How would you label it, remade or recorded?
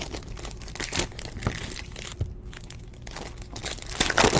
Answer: recorded